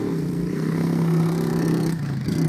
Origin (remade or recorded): remade